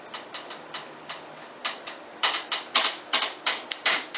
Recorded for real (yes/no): yes